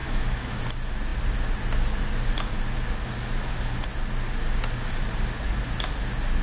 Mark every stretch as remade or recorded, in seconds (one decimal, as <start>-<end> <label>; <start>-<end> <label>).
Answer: 0.0-0.6 remade; 0.6-6.4 recorded